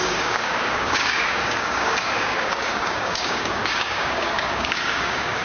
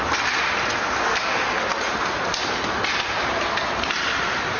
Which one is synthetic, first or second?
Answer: first